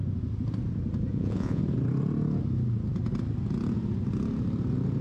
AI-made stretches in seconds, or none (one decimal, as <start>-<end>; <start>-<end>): 1.1-1.6